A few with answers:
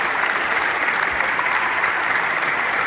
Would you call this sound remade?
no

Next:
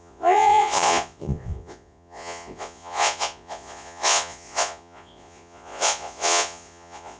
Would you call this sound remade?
yes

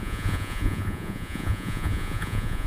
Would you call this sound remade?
yes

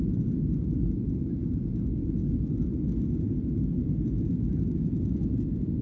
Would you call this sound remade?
no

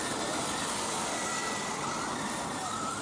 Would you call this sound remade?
no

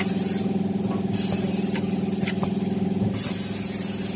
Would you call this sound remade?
no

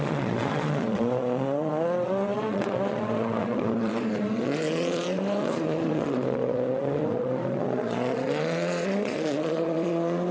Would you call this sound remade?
yes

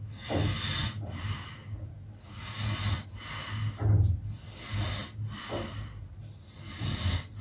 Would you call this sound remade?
no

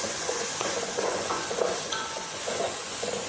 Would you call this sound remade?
yes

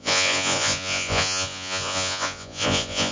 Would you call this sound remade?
yes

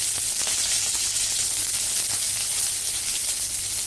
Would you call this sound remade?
no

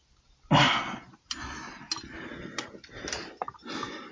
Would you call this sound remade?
no